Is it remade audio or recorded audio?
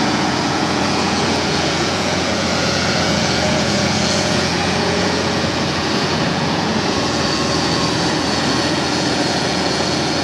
remade